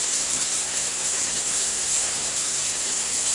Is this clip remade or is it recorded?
remade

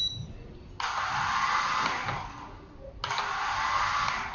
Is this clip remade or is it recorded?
recorded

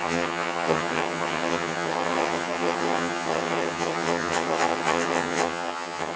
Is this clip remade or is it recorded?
remade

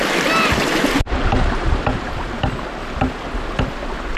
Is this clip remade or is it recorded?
recorded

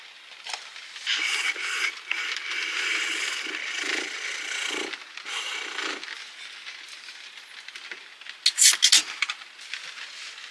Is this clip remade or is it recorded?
recorded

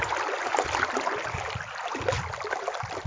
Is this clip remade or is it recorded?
recorded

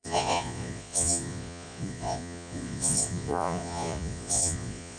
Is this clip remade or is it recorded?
remade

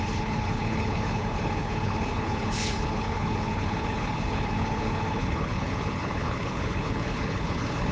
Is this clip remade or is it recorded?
remade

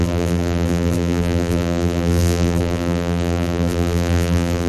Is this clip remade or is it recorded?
remade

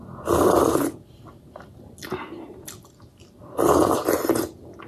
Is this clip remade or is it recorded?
recorded